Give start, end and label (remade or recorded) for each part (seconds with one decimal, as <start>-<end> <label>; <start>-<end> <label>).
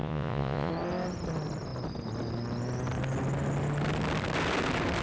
0.0-0.7 remade; 0.7-5.0 recorded